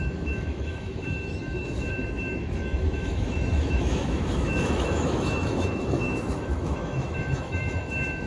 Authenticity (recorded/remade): remade